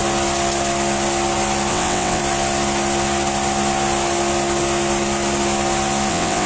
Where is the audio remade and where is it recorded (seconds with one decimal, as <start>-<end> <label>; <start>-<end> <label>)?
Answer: 0.0-1.7 recorded; 1.7-2.2 remade; 2.2-6.1 recorded; 6.1-6.5 remade